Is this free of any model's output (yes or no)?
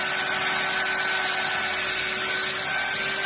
yes